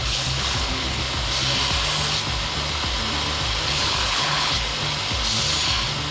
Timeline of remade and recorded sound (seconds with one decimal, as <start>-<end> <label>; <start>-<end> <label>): 0.0-1.0 remade; 1.0-3.7 recorded; 3.7-4.7 remade; 4.7-6.1 recorded